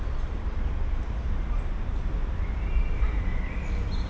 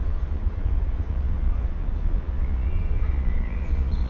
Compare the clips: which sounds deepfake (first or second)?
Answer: second